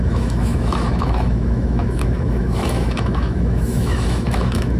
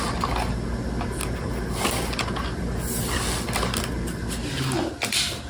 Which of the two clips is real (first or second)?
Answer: second